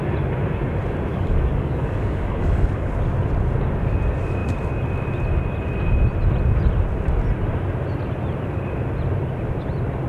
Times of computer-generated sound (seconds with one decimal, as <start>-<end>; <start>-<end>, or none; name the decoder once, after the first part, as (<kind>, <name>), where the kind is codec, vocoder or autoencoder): 1.1-2.9 (codec, DAC)